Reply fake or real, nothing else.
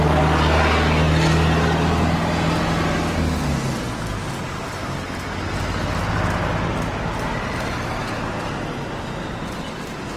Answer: real